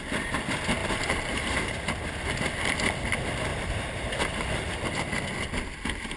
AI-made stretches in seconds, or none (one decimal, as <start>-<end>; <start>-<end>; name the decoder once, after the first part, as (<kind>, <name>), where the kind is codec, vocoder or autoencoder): 0.8-2.1 (vocoder, BigVGAN v2); 3.5-4.9